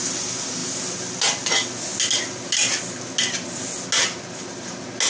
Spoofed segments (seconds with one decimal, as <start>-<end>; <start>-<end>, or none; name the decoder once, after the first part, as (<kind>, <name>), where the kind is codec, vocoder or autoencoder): none

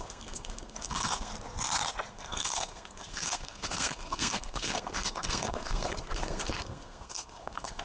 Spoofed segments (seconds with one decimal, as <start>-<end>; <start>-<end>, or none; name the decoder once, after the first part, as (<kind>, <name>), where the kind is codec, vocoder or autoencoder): 0.0-1.3 (codec, SNAC); 2.1-7.8

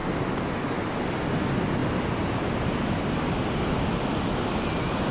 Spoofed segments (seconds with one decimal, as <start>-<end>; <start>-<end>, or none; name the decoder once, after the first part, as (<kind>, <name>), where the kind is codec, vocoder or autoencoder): none